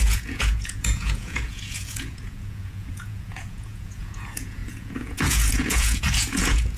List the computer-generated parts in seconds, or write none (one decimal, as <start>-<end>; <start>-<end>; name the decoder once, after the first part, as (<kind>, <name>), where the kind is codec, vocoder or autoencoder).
0.0-6.8 (vocoder, Vocos)